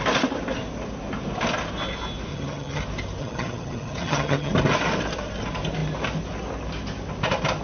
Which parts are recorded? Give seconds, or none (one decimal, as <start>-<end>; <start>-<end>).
0.0-2.3; 2.8-3.2; 4.5-7.6